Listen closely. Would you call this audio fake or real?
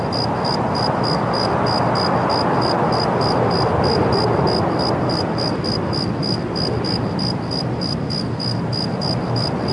real